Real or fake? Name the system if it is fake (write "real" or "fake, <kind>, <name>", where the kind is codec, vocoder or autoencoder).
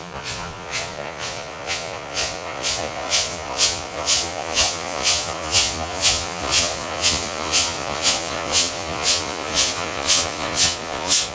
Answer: fake, vocoder, Vocos